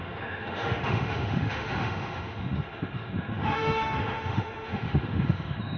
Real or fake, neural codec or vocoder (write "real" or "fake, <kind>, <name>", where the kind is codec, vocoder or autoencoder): fake, autoencoder, DAC-VAE